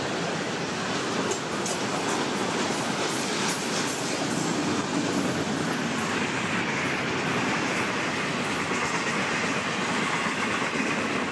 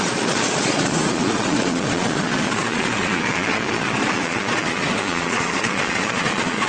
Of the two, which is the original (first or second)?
first